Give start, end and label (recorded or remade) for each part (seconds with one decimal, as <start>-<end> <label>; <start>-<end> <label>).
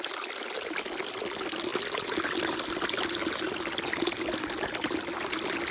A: 0.0-5.7 recorded